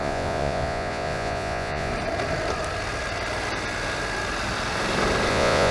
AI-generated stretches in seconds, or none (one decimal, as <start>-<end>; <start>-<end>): 0.0-1.9; 5.3-5.7